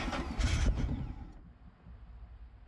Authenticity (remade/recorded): recorded